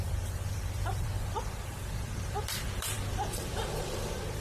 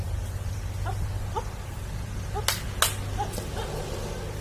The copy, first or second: first